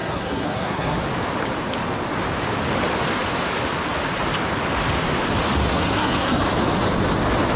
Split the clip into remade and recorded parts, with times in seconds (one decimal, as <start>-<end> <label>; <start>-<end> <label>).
0.0-1.0 remade; 1.0-5.7 recorded; 5.7-6.4 remade; 6.4-7.6 recorded